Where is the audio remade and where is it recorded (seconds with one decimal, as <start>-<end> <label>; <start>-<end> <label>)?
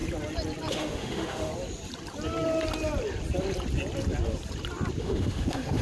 0.0-0.7 recorded; 0.7-1.5 remade; 1.5-5.0 recorded; 5.0-5.8 remade